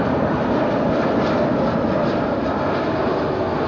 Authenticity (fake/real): real